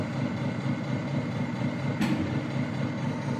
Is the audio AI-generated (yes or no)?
yes